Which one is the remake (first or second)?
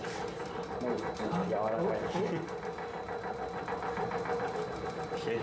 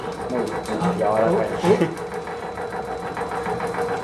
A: first